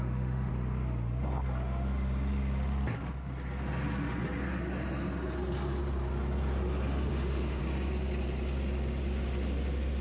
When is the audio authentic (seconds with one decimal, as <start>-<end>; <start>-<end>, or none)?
0.5-7.1; 7.6-10.0